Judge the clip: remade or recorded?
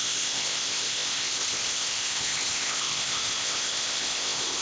remade